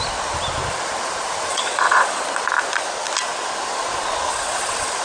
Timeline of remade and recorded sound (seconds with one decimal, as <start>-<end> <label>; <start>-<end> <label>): 0.0-1.5 recorded; 1.5-2.2 remade; 2.2-4.3 recorded; 4.3-5.0 remade